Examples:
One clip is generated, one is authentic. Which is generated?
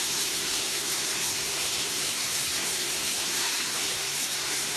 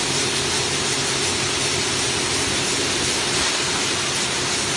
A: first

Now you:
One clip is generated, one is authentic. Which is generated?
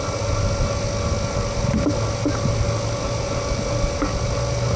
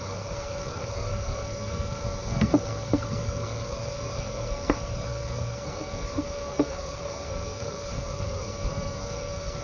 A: second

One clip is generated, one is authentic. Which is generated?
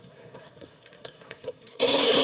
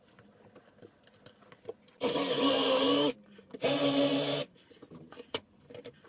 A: first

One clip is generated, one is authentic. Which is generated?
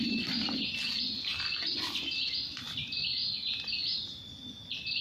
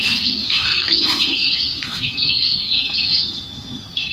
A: second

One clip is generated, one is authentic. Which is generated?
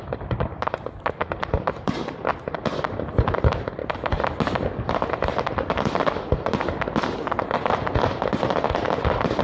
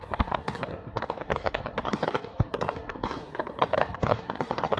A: second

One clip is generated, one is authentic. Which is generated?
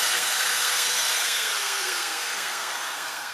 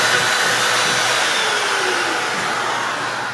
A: first